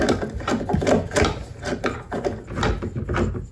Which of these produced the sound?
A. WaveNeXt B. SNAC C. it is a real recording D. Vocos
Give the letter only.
C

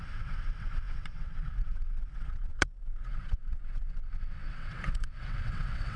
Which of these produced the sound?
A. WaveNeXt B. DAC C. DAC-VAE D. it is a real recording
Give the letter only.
A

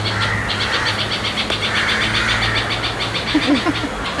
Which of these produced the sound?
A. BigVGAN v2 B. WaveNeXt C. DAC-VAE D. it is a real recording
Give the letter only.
D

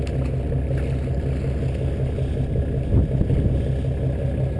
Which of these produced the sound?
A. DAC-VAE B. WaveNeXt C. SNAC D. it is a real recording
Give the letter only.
D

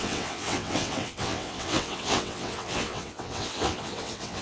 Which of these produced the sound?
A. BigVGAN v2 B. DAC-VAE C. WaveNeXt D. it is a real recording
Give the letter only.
C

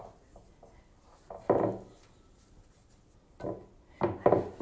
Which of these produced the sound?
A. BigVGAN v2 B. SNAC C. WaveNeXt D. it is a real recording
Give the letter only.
D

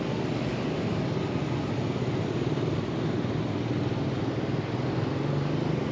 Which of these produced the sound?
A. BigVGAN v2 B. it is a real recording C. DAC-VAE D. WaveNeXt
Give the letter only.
B